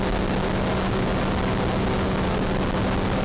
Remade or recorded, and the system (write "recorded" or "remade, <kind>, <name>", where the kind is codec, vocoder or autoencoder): recorded